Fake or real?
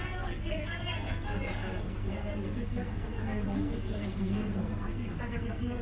fake